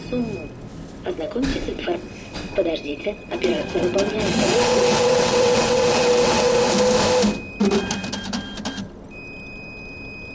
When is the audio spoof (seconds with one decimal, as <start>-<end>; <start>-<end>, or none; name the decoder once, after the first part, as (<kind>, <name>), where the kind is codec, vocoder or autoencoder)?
1.5-6.7 (vocoder, WaveNeXt)